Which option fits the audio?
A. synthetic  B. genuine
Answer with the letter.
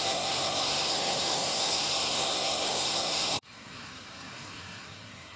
A